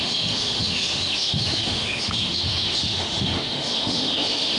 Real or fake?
fake